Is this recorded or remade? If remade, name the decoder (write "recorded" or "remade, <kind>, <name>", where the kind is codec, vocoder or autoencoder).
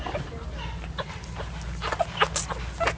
recorded